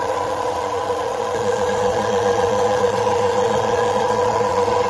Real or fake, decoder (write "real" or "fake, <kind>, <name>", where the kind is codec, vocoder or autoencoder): fake, vocoder, Vocos